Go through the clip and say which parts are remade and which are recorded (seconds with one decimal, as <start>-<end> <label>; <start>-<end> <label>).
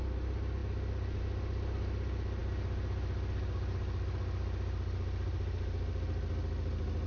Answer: 0.0-7.1 recorded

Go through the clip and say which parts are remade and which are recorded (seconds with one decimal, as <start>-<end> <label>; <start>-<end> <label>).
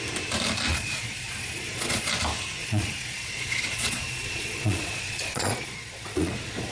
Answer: 0.0-0.7 recorded; 0.7-2.1 remade; 2.1-2.6 recorded; 2.6-6.7 remade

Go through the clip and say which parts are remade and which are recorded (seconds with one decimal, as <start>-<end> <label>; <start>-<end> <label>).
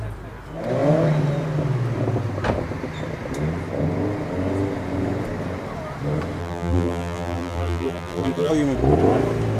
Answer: 0.0-6.4 recorded; 6.4-8.5 remade; 8.5-9.6 recorded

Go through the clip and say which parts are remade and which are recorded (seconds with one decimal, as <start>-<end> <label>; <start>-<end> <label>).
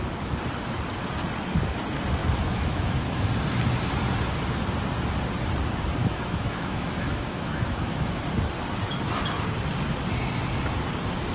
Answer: 0.0-2.2 recorded; 2.2-3.3 remade; 3.3-6.0 recorded; 6.0-8.2 remade; 8.2-11.3 recorded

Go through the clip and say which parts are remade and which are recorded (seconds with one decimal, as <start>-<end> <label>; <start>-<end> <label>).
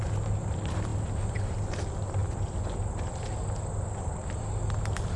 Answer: 0.0-5.2 recorded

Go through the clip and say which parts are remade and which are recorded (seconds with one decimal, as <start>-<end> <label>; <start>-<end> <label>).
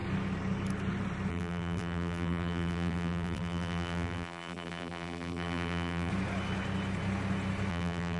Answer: 0.0-1.3 recorded; 1.3-6.1 remade; 6.1-7.7 recorded; 7.7-8.2 remade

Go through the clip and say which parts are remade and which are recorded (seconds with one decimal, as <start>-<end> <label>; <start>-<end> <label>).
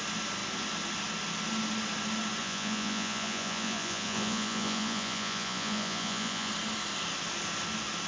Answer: 0.0-2.4 recorded; 2.4-6.5 remade; 6.5-8.1 recorded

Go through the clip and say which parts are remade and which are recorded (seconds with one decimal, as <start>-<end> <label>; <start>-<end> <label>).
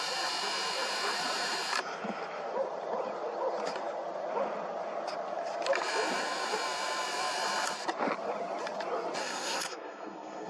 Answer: 0.0-9.2 recorded; 9.2-10.5 remade